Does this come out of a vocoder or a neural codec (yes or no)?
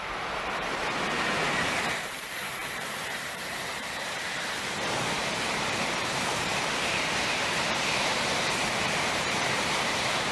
yes